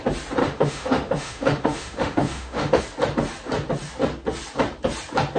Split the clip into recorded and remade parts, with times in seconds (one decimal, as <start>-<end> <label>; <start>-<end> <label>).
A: 0.0-0.4 recorded; 0.4-2.8 remade; 2.8-5.4 recorded